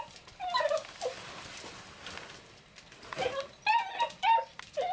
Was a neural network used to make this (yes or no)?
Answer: no